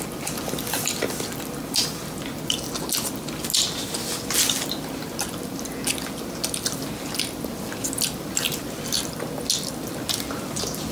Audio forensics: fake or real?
real